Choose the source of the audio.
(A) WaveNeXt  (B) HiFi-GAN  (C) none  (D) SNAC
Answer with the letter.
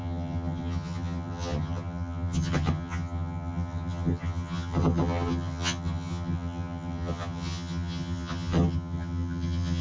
B